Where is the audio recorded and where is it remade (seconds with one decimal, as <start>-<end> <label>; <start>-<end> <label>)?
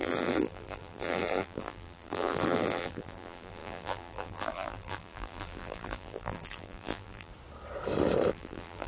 0.0-7.3 remade; 7.3-8.3 recorded; 8.3-8.9 remade